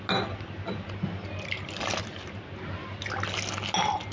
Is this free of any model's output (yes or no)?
yes